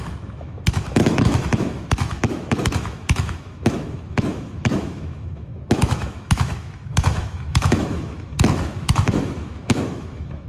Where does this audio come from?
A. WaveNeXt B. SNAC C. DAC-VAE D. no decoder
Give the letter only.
C